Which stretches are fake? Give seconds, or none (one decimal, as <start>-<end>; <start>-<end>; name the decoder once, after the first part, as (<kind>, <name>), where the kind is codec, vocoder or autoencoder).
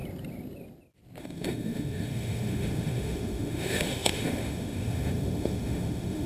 1.2-6.3 (autoencoder, DAC-VAE)